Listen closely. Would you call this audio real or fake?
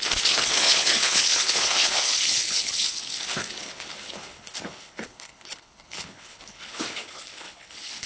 fake